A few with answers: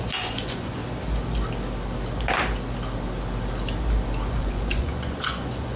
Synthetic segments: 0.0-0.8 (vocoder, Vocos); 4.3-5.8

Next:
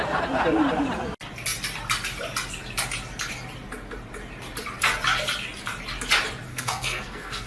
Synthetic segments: 6.5-7.5 (codec, SNAC)

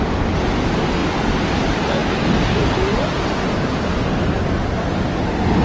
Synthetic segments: none

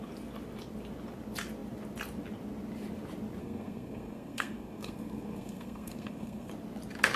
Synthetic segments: 3.4-6.5 (codec, SNAC)

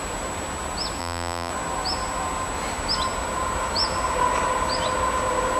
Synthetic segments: 1.0-1.5 (vocoder, BigVGAN v2)

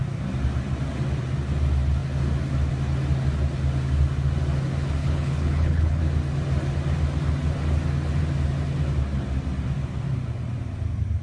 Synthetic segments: 5.0-6.0 (codec, HILCodec)